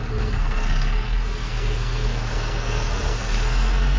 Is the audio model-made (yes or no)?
yes